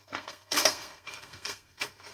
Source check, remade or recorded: remade